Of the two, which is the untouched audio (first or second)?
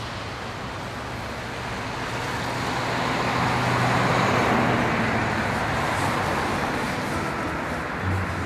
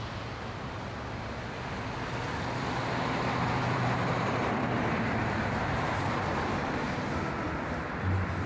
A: first